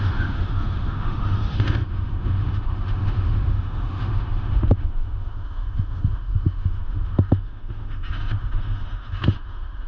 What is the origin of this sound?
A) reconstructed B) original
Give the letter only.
A